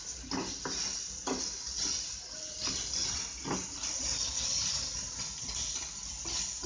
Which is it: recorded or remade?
recorded